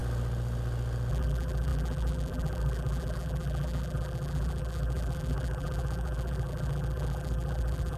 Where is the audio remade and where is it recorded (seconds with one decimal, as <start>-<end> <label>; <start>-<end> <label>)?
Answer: 0.0-1.1 recorded; 1.1-8.0 remade